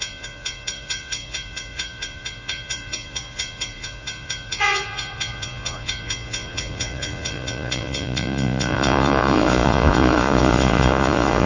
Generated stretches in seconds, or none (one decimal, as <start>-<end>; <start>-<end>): 0.0-11.5